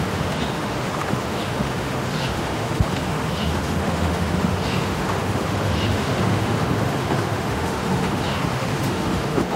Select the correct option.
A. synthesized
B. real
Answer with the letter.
A